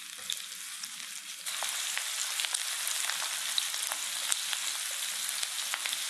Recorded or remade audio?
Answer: recorded